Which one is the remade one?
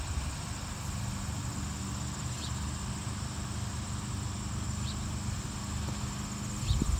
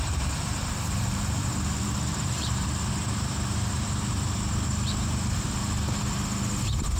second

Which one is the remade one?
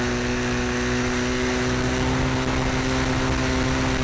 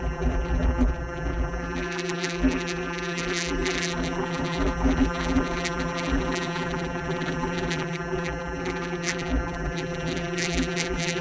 second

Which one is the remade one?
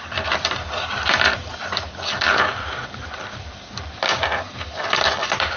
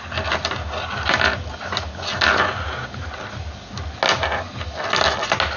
first